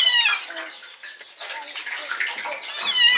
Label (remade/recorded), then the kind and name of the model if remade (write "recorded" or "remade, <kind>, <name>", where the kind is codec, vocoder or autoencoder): recorded